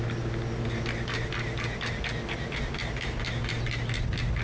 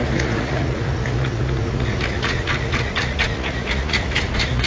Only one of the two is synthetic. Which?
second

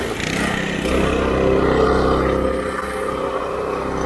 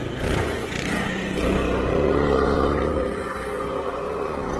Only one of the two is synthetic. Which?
second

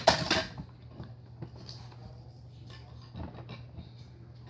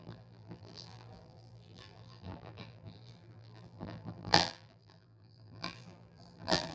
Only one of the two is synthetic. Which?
second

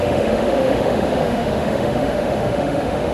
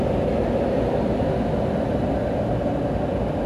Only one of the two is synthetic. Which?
first